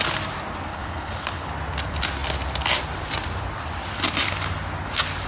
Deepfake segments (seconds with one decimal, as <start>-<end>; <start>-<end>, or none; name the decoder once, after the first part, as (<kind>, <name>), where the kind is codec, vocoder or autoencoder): 0.7-1.5 (codec, HILCodec)